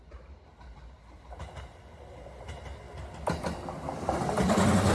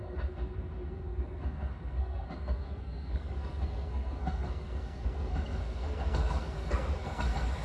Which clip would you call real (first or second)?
first